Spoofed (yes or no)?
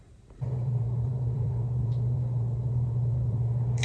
yes